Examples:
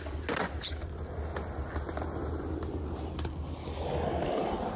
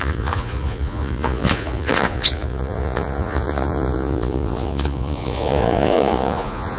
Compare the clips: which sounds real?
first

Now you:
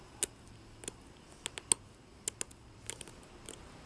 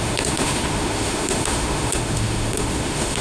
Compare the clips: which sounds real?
first